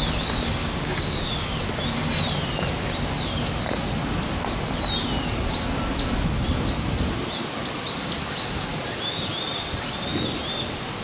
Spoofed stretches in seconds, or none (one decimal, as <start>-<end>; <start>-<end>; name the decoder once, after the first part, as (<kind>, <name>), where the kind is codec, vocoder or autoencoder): 0.6-1.3 (codec, DAC)